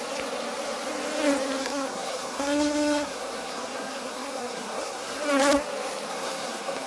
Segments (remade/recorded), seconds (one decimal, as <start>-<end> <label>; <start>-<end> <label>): 0.0-1.6 recorded; 1.6-5.2 remade; 5.2-6.1 recorded; 6.1-6.9 remade